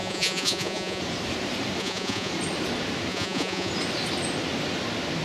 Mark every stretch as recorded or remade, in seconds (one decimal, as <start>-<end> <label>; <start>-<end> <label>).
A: 0.0-1.0 remade; 1.0-1.8 recorded; 1.8-2.3 remade; 2.3-3.1 recorded; 3.1-3.7 remade; 3.7-5.2 recorded